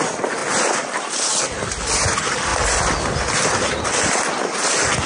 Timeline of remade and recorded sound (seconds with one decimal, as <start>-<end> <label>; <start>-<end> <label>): 0.0-5.1 recorded